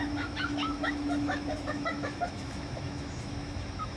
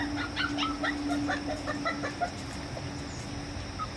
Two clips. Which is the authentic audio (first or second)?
second